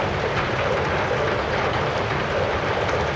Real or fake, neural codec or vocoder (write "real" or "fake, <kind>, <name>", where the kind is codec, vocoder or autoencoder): real